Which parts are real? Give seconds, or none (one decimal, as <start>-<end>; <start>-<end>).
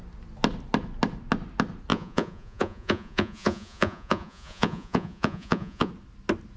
0.0-1.9; 5.9-6.6